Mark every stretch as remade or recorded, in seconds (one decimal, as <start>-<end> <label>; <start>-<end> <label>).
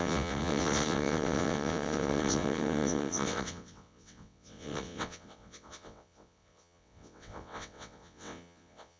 0.0-9.0 remade